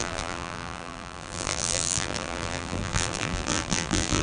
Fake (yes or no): yes